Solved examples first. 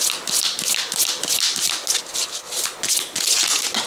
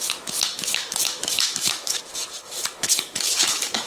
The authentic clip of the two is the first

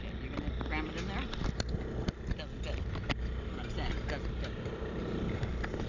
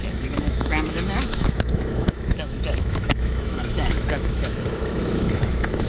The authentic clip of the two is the first